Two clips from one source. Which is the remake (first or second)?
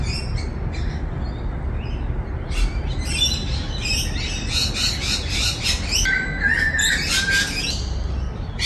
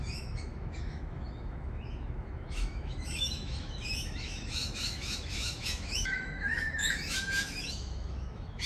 second